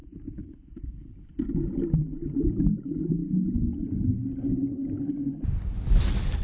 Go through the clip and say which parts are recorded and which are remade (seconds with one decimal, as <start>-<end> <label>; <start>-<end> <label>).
0.0-6.4 recorded